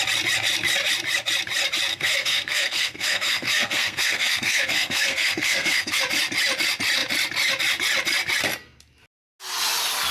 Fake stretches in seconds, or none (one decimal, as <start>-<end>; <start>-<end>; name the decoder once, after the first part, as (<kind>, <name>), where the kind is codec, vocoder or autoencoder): 1.9-6.0 (codec, SNAC)